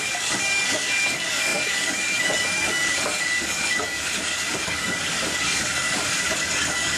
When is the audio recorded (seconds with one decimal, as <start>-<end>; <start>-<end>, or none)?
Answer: none